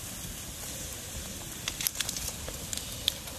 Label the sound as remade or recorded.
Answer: recorded